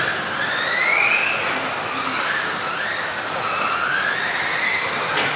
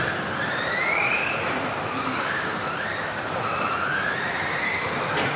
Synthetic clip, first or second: second